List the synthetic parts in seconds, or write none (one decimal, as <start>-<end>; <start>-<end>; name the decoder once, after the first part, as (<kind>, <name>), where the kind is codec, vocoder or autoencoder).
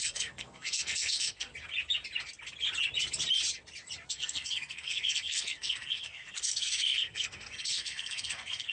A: 0.0-1.5 (codec, SNAC); 4.1-8.7